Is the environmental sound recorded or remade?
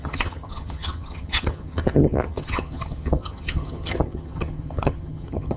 remade